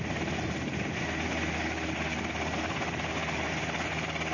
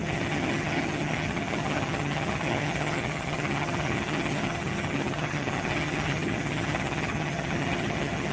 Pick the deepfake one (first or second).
second